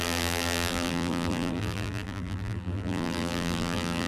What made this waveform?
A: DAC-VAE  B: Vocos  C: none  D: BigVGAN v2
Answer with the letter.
D